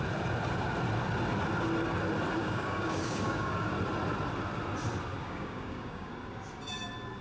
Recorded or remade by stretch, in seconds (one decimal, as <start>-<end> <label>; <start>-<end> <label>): 0.0-2.4 recorded; 2.4-3.7 remade; 3.7-5.2 recorded; 5.2-6.1 remade; 6.1-7.2 recorded